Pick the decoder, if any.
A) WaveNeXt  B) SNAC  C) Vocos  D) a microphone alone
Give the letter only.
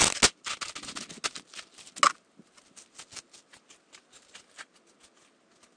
D